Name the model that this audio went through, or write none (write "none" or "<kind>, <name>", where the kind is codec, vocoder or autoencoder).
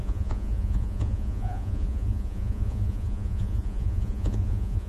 vocoder, Vocos